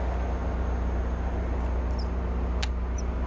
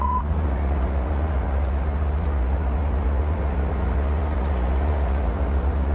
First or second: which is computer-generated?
second